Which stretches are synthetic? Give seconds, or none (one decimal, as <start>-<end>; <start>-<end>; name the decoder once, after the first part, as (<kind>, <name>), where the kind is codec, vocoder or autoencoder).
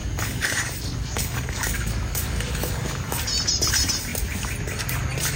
0.0-3.2 (codec, DAC)